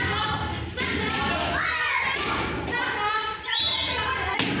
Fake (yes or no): no